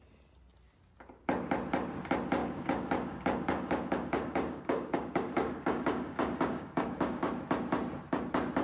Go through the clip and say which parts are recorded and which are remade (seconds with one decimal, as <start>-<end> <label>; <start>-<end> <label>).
0.0-2.4 recorded; 2.4-7.4 remade; 7.4-8.6 recorded